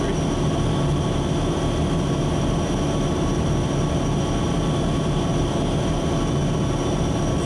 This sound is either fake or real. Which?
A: real